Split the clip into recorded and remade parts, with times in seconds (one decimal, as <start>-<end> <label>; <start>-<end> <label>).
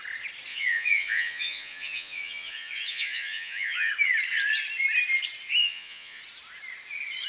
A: 0.0-0.5 recorded; 0.5-3.9 remade; 3.9-5.6 recorded; 5.6-6.2 remade; 6.2-7.3 recorded